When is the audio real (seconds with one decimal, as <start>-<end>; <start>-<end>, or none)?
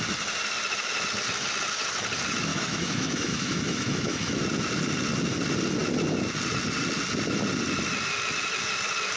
0.0-2.5; 4.4-9.2